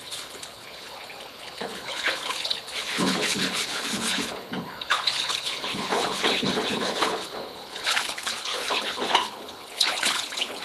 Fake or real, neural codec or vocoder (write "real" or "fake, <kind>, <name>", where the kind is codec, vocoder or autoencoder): fake, codec, HILCodec